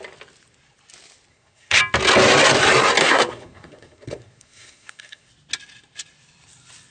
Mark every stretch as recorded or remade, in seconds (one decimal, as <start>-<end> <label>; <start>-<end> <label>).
0.0-1.3 recorded; 1.3-1.8 remade; 1.8-3.0 recorded; 3.0-5.3 remade; 5.3-6.9 recorded